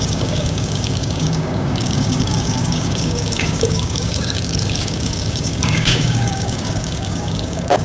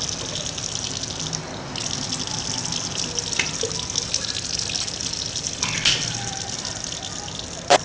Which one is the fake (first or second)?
first